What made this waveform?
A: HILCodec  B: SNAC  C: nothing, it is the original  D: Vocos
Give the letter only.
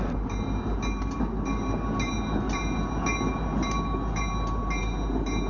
C